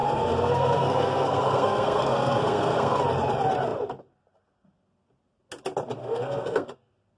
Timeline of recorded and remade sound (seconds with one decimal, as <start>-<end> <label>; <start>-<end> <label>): 0.0-3.0 remade; 3.0-6.0 recorded; 6.0-6.8 remade; 6.8-7.2 recorded